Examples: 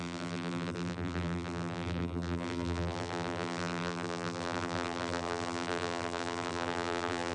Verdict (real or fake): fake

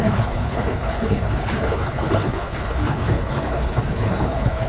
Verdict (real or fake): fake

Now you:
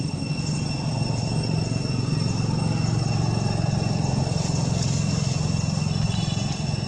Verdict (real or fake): real